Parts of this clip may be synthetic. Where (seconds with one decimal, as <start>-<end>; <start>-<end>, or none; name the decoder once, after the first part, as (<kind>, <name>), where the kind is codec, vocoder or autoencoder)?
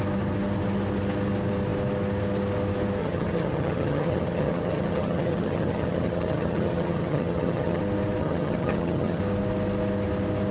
3.0-7.8 (vocoder, HiFi-GAN); 8.2-9.2